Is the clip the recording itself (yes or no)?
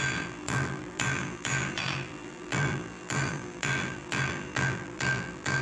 no